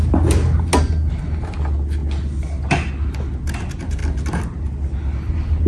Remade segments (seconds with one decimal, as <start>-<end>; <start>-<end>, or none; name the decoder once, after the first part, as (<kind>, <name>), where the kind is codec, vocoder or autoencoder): none